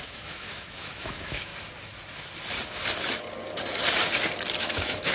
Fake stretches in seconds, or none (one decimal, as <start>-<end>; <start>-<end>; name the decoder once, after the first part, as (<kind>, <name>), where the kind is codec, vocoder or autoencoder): 0.0-1.5 (autoencoder, DAC-VAE); 4.6-5.1